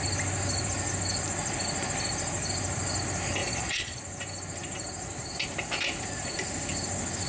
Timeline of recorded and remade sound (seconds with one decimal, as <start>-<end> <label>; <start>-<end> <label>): 0.0-3.4 recorded; 3.4-4.0 remade; 4.0-7.3 recorded